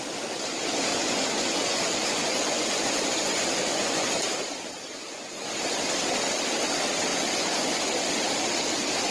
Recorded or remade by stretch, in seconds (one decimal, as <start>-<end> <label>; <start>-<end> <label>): 0.0-0.9 recorded; 0.9-4.2 remade; 4.2-4.9 recorded; 4.9-5.5 remade; 5.5-7.1 recorded; 7.1-7.8 remade; 7.8-9.1 recorded